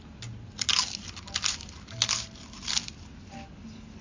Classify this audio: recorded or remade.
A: recorded